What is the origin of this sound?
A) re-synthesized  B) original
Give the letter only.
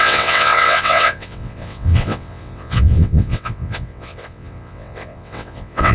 A